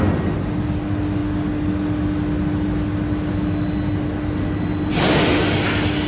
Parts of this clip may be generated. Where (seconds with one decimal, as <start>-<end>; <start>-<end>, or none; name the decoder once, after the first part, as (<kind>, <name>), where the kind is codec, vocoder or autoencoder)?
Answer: none